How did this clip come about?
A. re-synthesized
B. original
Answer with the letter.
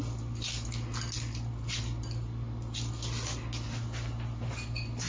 B